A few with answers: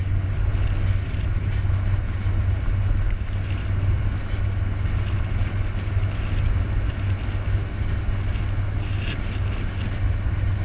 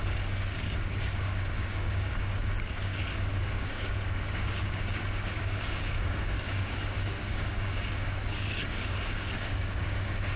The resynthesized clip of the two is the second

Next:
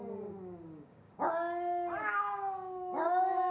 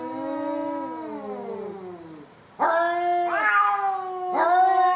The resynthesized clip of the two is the first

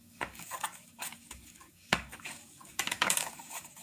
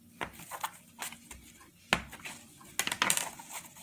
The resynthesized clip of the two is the first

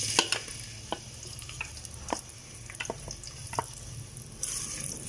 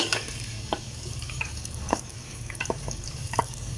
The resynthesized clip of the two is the second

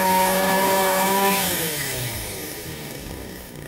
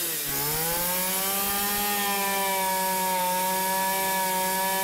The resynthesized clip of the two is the first